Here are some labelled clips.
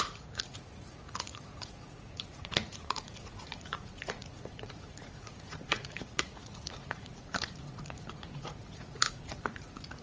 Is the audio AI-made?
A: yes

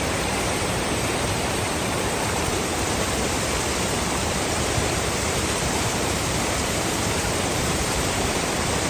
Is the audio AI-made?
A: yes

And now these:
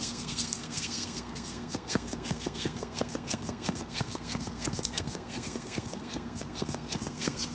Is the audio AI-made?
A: yes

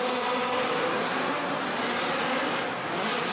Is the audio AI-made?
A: no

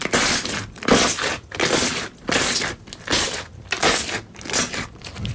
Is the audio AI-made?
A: no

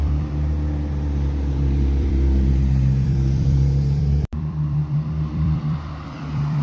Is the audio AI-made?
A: yes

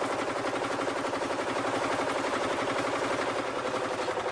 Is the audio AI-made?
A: no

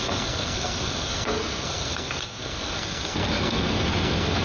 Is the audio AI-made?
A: yes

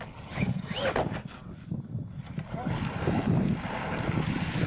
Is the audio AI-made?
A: no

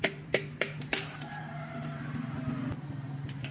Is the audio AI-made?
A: yes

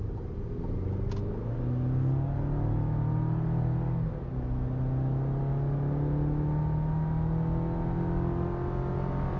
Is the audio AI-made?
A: no